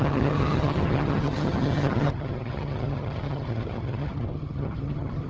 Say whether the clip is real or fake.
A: fake